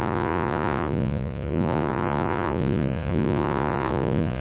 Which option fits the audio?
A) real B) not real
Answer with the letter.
B